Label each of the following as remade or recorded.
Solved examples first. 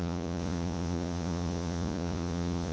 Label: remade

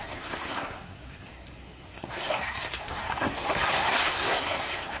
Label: remade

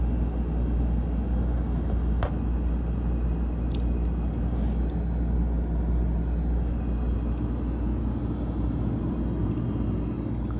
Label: recorded